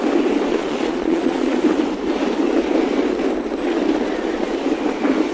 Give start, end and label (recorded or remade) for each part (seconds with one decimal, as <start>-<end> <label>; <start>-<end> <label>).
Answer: 0.0-0.5 recorded; 0.5-1.6 remade; 1.6-5.3 recorded